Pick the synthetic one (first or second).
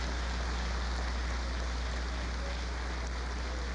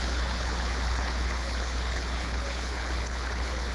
second